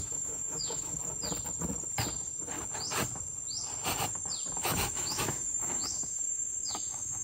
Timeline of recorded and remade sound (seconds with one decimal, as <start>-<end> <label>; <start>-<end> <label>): 0.0-1.0 remade; 1.0-4.6 recorded; 4.6-7.2 remade